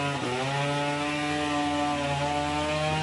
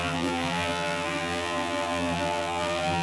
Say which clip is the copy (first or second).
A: second